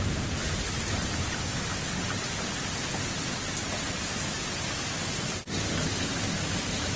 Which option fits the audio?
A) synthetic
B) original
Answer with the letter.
B